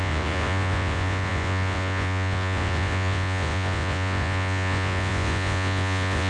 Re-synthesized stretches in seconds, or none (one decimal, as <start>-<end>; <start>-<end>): 0.0-6.3